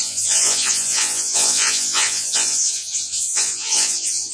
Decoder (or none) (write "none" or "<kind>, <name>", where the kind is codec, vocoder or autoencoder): vocoder, Vocos